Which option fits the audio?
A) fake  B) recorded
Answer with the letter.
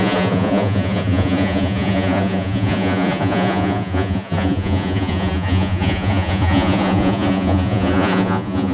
A